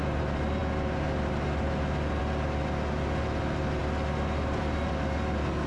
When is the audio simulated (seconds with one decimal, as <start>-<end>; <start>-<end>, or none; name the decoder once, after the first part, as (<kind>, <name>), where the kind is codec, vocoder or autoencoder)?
none